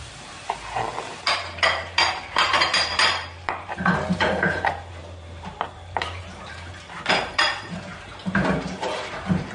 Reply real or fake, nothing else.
fake